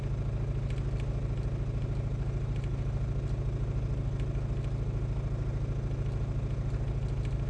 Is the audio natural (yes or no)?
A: yes